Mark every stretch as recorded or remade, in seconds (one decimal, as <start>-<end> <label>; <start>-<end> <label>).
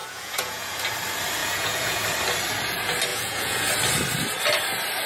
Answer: 0.0-0.8 remade; 0.8-1.4 recorded; 1.4-2.0 remade; 2.0-3.1 recorded; 3.1-3.7 remade; 3.7-5.1 recorded